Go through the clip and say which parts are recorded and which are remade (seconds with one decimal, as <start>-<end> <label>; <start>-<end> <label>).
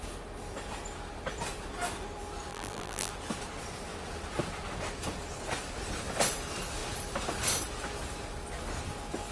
0.0-2.5 recorded; 2.5-3.1 remade; 3.1-9.3 recorded